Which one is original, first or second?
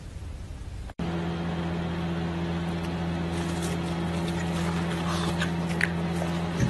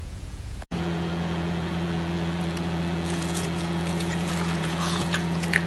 first